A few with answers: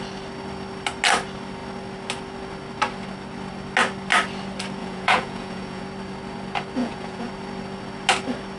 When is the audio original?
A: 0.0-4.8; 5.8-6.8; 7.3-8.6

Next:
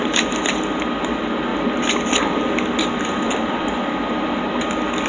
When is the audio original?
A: 1.5-2.4

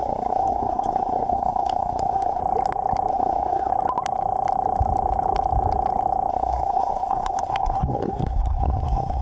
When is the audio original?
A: 2.4-3.1; 3.7-6.3

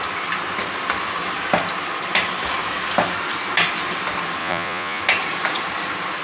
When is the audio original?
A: 0.0-4.4; 5.0-6.2

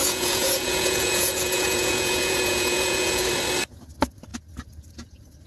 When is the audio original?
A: 3.3-5.5

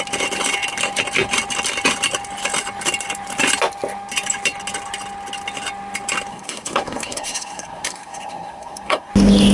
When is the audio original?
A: 0.0-6.3; 9.1-9.5

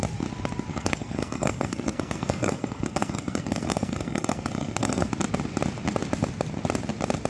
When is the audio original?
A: 0.0-0.7; 5.1-7.3